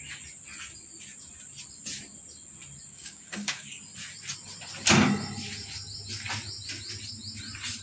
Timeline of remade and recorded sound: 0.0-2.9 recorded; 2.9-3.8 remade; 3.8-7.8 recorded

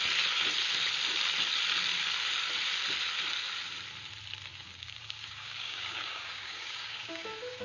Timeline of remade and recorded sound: 0.0-4.5 recorded; 4.5-7.6 remade